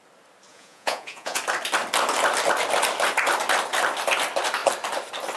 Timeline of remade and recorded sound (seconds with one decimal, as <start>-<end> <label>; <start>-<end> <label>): 0.0-0.5 recorded; 0.5-1.4 remade; 1.4-5.4 recorded